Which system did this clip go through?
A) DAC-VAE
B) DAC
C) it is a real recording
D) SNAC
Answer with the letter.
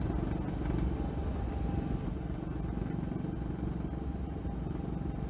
C